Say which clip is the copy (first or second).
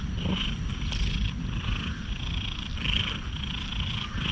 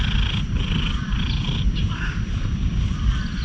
first